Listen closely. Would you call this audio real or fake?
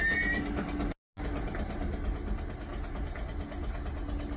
real